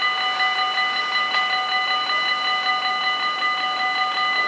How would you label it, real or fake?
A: real